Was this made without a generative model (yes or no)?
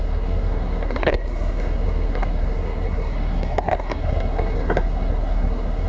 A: no